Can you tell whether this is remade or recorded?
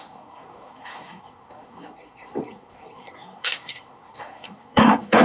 remade